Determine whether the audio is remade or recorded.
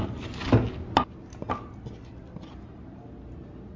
recorded